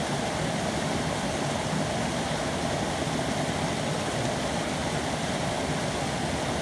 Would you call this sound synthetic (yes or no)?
no